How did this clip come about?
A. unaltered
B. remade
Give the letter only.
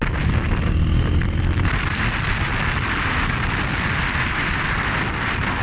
A